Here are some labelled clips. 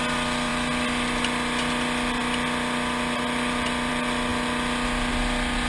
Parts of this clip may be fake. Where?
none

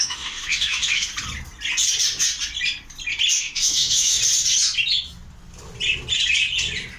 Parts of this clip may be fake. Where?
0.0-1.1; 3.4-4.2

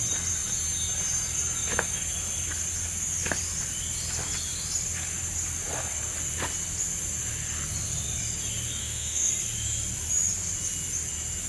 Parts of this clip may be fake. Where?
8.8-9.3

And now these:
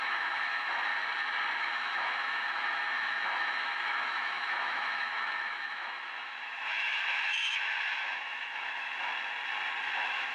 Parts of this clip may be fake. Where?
0.0-0.9; 1.6-9.1; 9.8-10.3

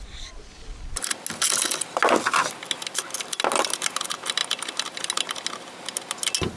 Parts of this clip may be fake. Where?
none